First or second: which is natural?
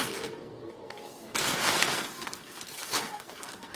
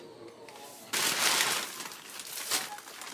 second